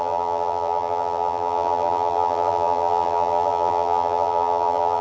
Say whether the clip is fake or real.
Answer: fake